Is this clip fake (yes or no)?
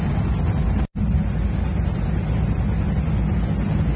no